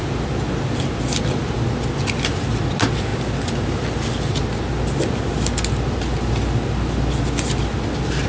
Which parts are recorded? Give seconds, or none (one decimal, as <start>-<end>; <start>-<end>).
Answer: 0.0-8.3